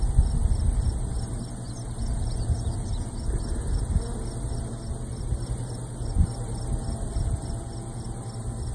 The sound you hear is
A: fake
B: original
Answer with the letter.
B